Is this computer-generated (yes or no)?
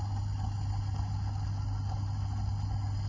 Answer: no